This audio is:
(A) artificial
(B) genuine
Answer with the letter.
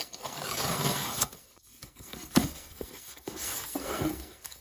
A